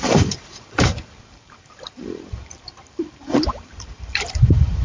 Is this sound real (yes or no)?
no